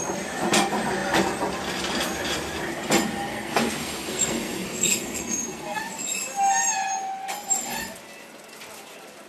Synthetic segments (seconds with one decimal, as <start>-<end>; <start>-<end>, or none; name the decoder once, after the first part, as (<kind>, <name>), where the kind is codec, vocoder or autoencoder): 3.3-5.8 (codec, SNAC)